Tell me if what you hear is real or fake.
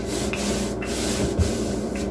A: real